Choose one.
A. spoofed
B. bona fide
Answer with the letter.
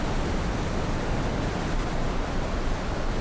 B